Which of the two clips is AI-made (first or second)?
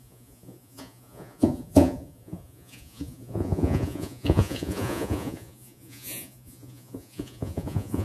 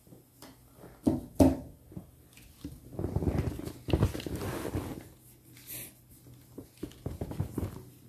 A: first